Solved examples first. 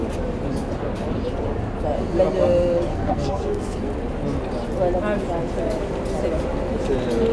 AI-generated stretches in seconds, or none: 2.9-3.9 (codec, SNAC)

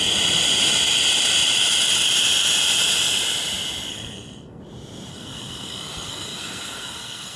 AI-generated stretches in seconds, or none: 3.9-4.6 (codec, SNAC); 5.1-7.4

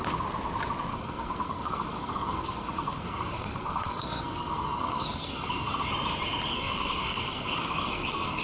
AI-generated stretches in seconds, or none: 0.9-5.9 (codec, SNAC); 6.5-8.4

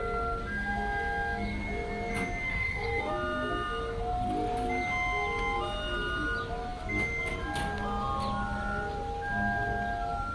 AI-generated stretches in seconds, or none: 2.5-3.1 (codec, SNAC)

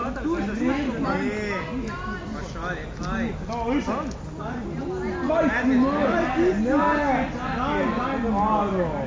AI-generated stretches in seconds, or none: none

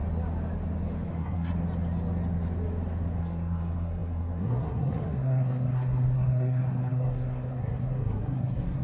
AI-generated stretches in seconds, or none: 1.1-1.5 (codec, SNAC); 3.2-8.8

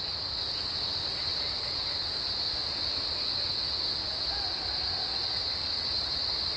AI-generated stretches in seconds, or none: none